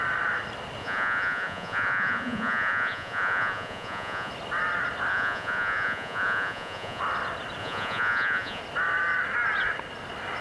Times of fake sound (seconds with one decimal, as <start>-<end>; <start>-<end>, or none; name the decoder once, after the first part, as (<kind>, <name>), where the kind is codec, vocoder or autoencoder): 0.8-4.3 (vocoder, Vocos); 5.1-7.0; 7.6-8.6